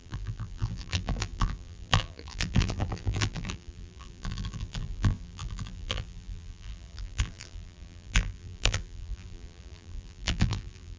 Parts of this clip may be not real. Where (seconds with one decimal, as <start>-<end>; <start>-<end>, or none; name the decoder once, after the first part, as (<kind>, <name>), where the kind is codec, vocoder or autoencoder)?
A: 0.0-11.0 (vocoder, BigVGAN v2)